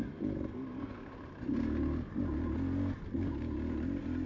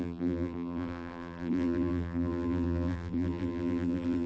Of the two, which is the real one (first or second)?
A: first